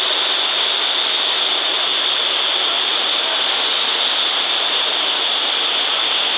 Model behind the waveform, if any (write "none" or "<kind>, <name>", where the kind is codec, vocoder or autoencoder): none